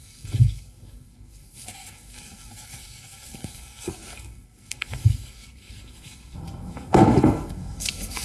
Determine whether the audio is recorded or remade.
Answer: remade